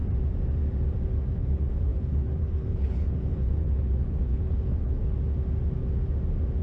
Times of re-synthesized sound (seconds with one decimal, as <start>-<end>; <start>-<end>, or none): 1.3-5.0